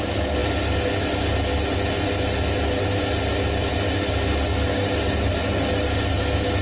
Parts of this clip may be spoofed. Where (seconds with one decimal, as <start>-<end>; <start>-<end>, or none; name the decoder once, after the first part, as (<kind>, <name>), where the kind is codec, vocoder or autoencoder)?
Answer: none